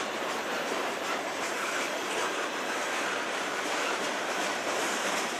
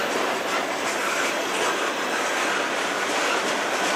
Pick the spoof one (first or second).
first